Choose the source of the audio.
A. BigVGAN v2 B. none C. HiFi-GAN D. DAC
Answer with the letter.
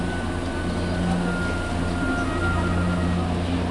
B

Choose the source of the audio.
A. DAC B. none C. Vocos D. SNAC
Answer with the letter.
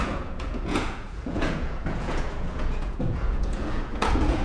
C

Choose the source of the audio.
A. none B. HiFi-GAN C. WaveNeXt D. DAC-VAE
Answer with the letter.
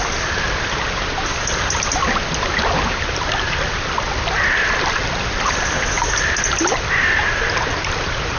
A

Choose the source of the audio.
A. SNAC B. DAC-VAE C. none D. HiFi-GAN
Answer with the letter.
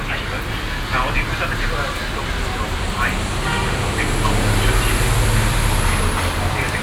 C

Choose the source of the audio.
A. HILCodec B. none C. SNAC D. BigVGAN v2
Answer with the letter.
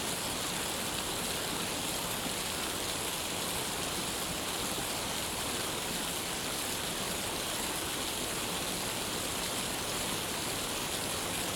B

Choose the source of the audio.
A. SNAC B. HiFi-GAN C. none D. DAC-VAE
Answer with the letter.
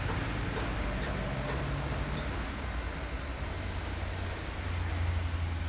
C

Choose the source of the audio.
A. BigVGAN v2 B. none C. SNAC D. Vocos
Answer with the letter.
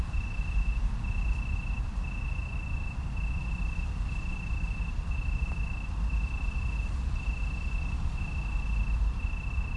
B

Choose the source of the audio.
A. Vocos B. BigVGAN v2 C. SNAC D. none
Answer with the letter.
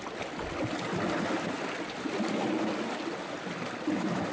D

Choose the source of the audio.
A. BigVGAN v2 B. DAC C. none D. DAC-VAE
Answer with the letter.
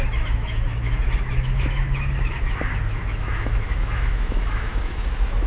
D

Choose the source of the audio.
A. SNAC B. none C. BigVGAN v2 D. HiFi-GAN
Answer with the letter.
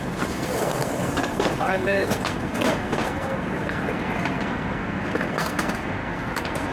A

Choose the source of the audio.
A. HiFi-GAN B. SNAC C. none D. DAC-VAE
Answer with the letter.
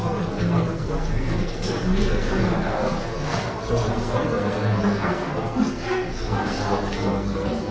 B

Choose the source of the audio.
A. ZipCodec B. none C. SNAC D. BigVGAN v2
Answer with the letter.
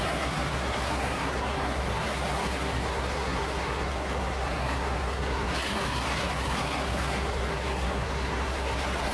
C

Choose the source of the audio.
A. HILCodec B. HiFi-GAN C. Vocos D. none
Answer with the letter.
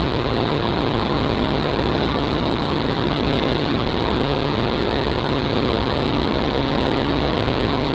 B